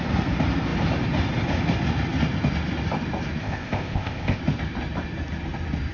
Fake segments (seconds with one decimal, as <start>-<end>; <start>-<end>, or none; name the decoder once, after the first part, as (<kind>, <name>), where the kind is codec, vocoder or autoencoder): 3.4-4.4 (codec, ZipCodec)